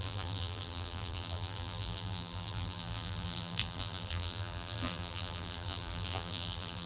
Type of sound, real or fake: fake